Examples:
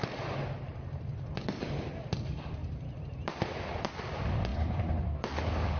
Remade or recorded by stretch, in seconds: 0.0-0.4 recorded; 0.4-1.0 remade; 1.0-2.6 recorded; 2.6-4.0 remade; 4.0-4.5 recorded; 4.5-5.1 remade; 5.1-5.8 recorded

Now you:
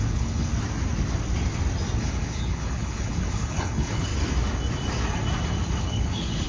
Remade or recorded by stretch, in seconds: 0.0-0.5 remade; 0.5-2.0 recorded; 2.0-4.1 remade; 4.1-5.8 recorded; 5.8-6.5 remade